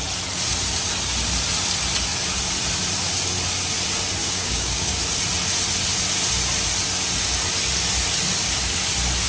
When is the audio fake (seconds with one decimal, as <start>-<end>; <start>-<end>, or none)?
4.2-5.0